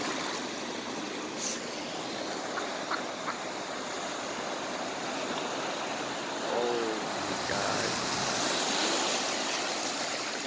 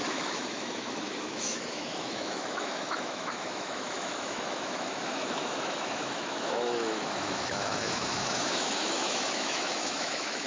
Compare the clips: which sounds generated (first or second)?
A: second